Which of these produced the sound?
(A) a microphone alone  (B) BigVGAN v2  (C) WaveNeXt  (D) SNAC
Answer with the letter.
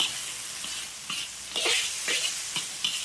A